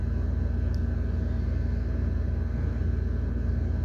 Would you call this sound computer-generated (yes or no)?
no